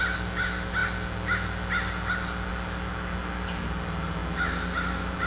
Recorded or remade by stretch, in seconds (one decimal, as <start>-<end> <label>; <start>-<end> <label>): 0.0-5.3 recorded